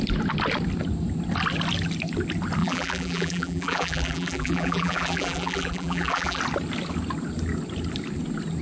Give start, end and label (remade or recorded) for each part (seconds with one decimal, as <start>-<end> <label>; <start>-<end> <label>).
0.0-2.6 recorded; 2.6-6.4 remade; 6.4-8.6 recorded